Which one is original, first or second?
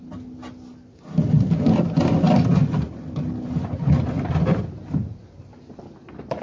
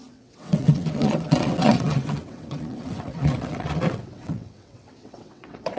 first